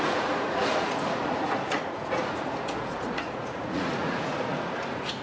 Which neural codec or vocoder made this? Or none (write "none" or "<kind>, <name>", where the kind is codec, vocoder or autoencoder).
vocoder, Vocos